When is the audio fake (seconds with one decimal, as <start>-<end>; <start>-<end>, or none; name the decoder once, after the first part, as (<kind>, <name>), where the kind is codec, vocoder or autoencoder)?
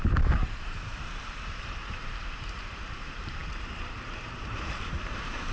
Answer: 0.0-5.5 (vocoder, BigVGAN v2)